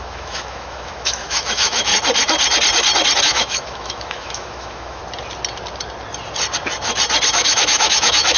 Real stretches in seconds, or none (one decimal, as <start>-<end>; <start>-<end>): 1.9-3.2; 5.0-7.3